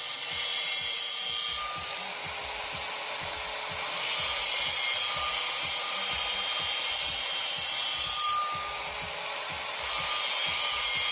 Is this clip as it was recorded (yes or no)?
yes